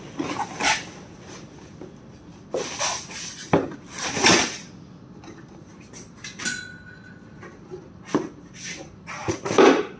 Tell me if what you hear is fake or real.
real